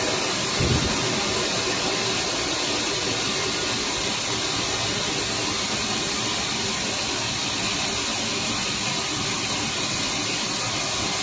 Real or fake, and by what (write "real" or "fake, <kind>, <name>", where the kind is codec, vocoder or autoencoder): real